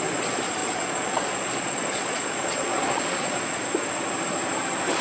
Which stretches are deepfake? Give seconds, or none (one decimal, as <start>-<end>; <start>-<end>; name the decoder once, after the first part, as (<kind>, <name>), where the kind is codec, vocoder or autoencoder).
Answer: 0.6-3.6 (vocoder, Vocos)

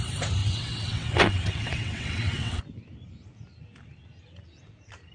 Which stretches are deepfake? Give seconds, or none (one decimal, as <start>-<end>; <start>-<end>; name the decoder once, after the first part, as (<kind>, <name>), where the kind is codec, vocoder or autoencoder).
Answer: 0.4-2.6 (vocoder, WaveNeXt)